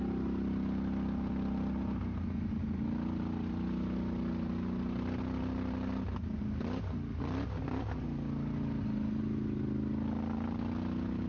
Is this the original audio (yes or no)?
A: yes